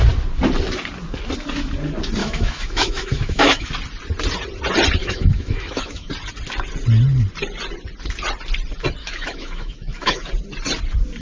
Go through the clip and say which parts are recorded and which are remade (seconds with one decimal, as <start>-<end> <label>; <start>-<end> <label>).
0.0-2.2 recorded; 2.2-3.7 remade; 3.7-5.0 recorded; 5.0-6.1 remade; 6.1-9.0 recorded; 9.0-10.3 remade; 10.3-11.2 recorded